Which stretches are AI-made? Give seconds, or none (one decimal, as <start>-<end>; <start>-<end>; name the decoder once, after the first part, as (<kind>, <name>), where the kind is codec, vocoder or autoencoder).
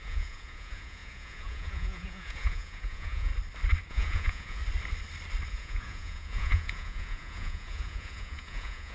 0.0-3.3 (vocoder, Vocos); 3.9-4.6; 5.5-8.9